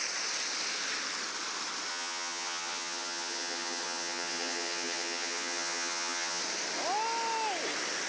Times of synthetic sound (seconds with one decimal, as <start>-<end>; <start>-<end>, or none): 1.9-6.4